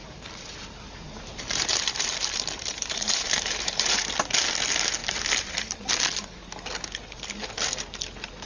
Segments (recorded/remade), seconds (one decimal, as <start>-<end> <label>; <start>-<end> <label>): 0.0-4.1 remade; 4.1-5.0 recorded; 5.0-5.9 remade; 5.9-8.5 recorded